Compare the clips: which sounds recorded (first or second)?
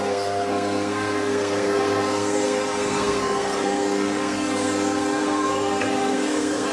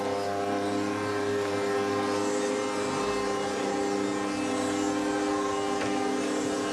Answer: second